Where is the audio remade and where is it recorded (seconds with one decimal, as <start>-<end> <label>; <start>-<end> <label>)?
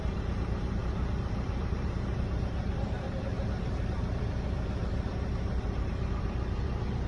0.0-7.1 remade